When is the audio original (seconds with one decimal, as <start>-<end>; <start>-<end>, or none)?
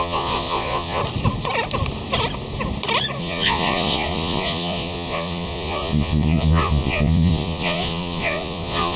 1.0-3.2